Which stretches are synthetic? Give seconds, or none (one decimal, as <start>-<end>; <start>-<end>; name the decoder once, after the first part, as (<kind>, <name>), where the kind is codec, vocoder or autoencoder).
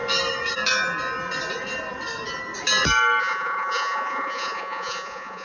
3.2-5.4 (vocoder, Vocos)